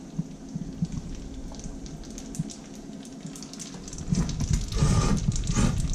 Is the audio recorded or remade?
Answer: recorded